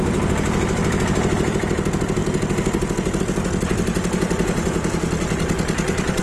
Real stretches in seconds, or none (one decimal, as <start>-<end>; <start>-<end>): 0.0-6.2